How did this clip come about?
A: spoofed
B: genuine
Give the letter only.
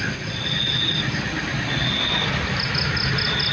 B